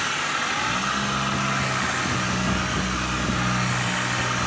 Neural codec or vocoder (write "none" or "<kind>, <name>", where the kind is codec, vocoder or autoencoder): none